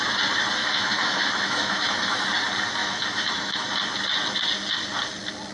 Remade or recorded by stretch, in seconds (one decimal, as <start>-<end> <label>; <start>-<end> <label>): 0.0-0.6 recorded; 0.6-2.3 remade; 2.3-2.8 recorded; 2.8-3.7 remade; 3.7-5.5 recorded